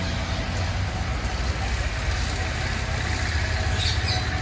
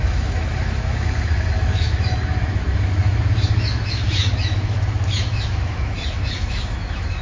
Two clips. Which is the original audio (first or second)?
first